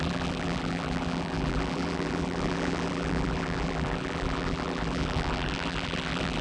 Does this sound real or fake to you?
fake